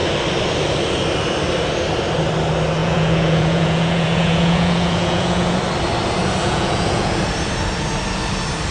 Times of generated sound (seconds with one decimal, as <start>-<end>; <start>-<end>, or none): 2.8-5.6; 6.4-7.2